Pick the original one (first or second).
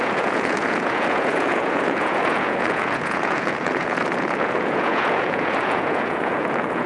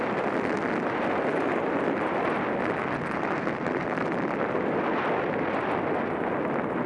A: second